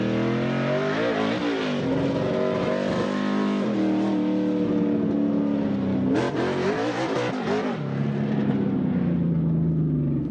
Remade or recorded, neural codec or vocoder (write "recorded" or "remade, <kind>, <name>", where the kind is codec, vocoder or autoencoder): recorded